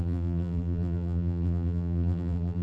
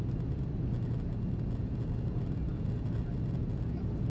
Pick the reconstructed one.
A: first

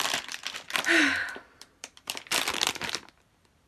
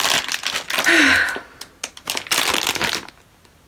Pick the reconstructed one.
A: first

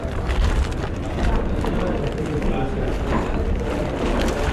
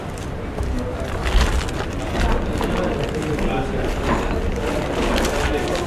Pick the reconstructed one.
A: first